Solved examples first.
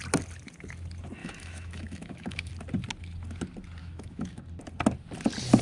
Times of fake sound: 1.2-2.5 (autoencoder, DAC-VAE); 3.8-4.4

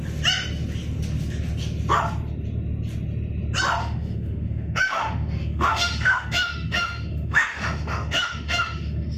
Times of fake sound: 3.8-9.2 (autoencoder, DAC-VAE)

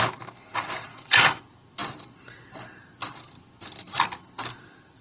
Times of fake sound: 0.9-1.4 (autoencoder, DAC-VAE)

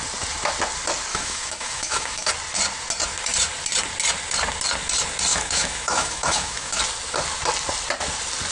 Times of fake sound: 1.1-2.3 (autoencoder, DAC-VAE); 5.3-6.8